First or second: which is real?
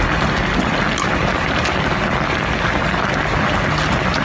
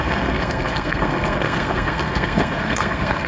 first